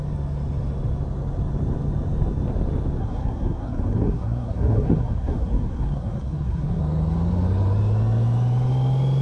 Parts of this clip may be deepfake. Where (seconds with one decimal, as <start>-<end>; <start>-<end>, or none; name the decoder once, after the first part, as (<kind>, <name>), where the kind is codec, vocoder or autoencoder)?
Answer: 3.0-6.8 (codec, SNAC)